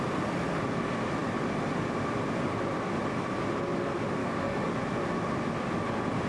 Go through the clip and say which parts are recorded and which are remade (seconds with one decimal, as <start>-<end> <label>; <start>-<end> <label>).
0.0-4.2 recorded; 4.2-4.7 remade; 4.7-6.3 recorded